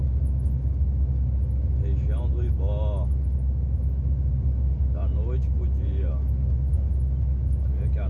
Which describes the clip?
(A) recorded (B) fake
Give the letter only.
A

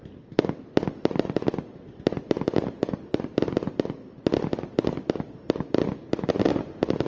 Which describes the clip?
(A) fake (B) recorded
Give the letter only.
B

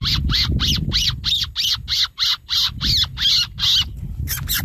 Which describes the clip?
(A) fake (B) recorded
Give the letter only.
B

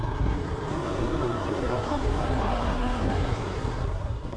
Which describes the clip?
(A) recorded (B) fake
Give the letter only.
B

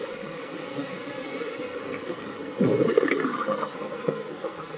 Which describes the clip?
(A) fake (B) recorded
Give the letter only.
A